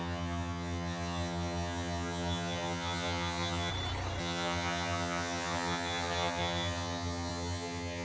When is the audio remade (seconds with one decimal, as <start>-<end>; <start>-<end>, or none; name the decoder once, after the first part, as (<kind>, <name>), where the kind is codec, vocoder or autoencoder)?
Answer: 0.0-3.7 (vocoder, HiFi-GAN); 4.2-8.0